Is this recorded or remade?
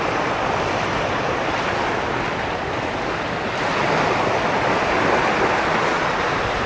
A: recorded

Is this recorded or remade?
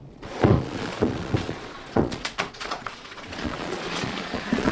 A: remade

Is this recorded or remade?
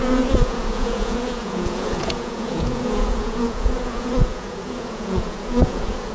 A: remade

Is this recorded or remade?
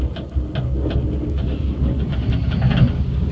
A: recorded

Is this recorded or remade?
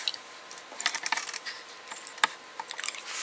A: remade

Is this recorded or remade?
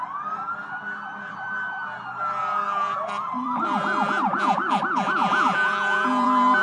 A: remade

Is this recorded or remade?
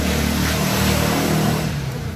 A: recorded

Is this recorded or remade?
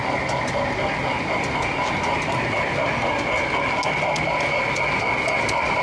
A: recorded